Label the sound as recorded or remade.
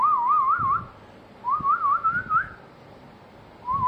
recorded